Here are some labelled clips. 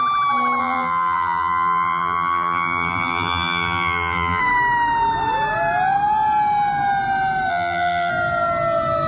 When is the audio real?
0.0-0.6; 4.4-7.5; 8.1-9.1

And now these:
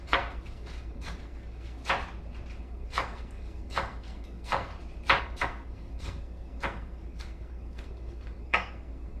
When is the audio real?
1.8-2.6; 4.7-5.2

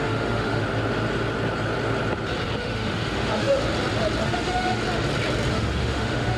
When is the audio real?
0.6-2.6; 3.6-4.2; 4.8-5.5

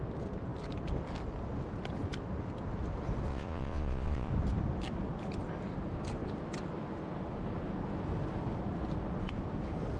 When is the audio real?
0.0-3.3; 4.3-10.0

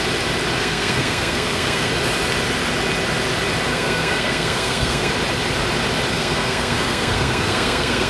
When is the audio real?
0.0-0.6; 1.9-3.7; 5.1-6.1

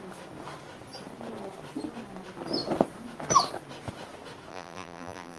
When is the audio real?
0.0-4.5